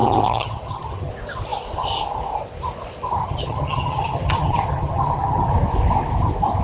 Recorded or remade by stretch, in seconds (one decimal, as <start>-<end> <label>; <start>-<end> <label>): 0.0-1.1 remade; 1.1-3.2 recorded; 3.2-5.5 remade; 5.5-6.6 recorded